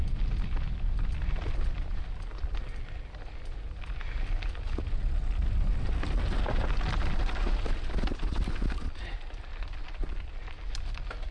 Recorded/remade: recorded